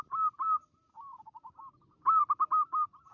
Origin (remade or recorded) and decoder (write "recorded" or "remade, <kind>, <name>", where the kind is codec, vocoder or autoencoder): recorded